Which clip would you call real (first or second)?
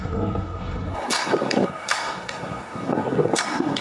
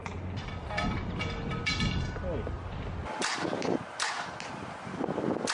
second